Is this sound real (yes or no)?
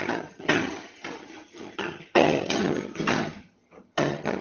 no